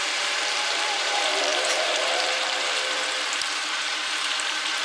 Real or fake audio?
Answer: fake